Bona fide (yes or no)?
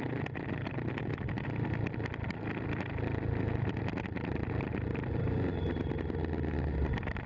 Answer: yes